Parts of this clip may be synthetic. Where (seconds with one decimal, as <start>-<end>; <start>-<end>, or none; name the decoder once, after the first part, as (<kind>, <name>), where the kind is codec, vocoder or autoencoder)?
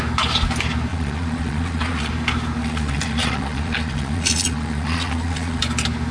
0.9-2.1 (vocoder, Vocos); 2.6-5.6